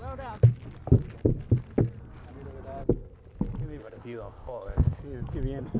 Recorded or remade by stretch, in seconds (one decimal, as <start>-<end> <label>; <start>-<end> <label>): 0.0-3.8 recorded; 3.8-5.0 remade; 5.0-5.8 recorded